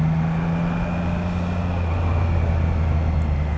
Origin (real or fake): real